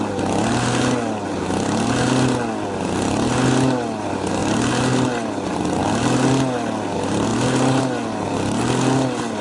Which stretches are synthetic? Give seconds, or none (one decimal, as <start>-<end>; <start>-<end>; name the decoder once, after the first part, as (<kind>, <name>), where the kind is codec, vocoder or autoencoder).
none